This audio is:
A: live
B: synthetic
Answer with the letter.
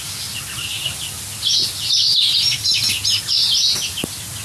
A